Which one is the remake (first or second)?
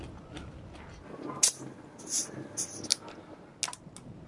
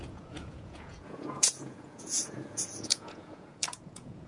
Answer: second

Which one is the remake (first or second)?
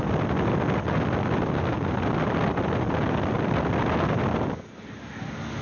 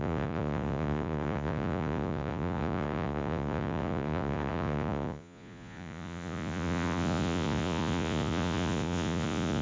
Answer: second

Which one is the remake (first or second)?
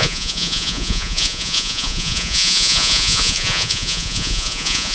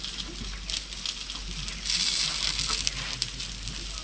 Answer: first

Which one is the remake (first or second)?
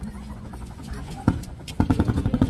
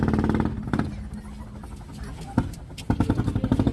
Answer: first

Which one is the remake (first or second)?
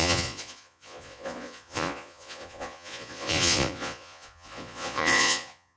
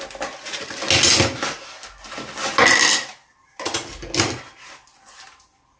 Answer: first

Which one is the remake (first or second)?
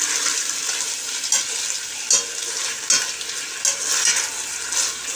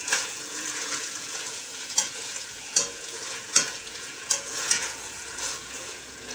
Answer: second